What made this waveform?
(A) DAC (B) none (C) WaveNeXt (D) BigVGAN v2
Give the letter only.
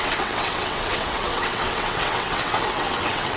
C